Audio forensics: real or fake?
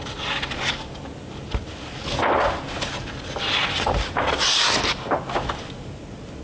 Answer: real